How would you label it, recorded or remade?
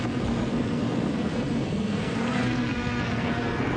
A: remade